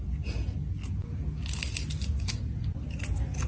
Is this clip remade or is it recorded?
recorded